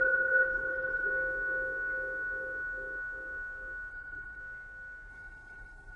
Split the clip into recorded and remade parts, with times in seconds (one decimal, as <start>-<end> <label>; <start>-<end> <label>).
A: 0.0-1.1 remade; 1.1-3.9 recorded; 3.9-4.4 remade; 4.4-5.1 recorded; 5.1-6.0 remade